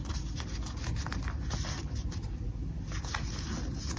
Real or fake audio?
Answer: real